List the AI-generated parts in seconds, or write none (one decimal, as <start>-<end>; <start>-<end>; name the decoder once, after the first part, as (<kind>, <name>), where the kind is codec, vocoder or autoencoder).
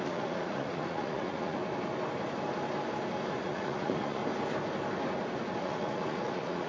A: 0.0-1.6 (vocoder, Vocos); 3.4-4.2; 5.6-6.7